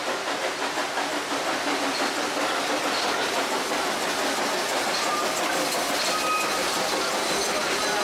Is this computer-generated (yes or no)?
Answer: no